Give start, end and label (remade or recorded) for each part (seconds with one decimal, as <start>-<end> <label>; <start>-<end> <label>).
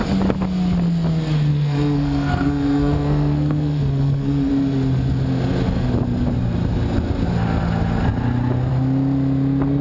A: 0.0-1.5 recorded; 1.5-4.5 remade; 4.5-9.8 recorded